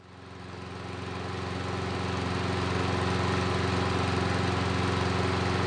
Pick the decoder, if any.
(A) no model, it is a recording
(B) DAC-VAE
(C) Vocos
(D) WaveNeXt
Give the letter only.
A